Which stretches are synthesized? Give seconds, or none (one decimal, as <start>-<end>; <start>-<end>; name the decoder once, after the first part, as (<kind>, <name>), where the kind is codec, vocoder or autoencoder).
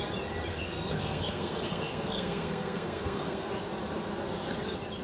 0.5-3.5 (codec, SNAC)